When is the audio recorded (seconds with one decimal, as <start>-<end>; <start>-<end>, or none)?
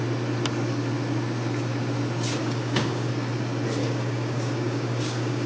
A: 0.0-2.4; 3.1-3.8